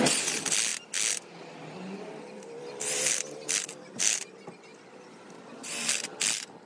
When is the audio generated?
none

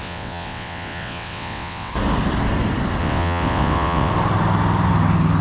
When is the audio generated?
0.0-1.9 (vocoder, WaveNeXt); 3.0-4.1

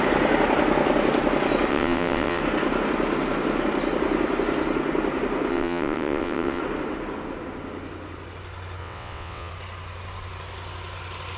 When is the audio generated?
1.7-2.4 (vocoder, WaveNeXt); 5.5-6.6; 8.8-9.5